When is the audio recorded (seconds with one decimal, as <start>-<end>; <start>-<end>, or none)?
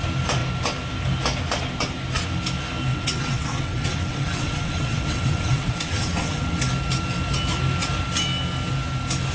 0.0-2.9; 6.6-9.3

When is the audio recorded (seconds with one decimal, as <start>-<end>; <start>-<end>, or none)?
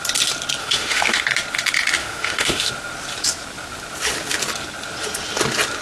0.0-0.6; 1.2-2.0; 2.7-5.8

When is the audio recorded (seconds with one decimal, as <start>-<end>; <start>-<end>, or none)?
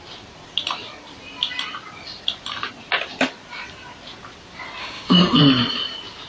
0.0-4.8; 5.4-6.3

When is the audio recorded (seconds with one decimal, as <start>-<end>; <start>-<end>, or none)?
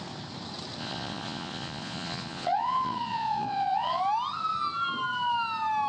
0.0-0.8; 4.0-5.9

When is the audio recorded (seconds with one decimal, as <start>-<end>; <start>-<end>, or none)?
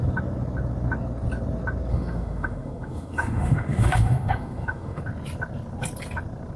0.0-1.9; 5.0-6.6